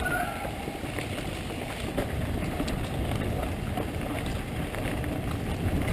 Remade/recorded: remade